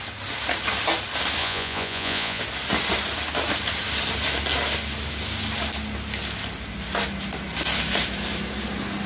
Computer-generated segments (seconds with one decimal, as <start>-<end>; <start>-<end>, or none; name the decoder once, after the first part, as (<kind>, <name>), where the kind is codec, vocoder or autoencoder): 1.4-2.4 (vocoder, Vocos)